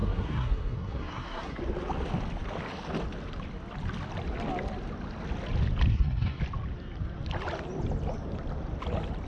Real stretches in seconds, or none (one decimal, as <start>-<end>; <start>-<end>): 1.6-5.9; 6.4-9.3